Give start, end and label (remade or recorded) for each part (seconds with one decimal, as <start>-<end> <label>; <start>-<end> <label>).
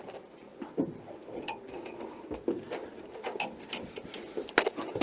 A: 0.0-5.0 recorded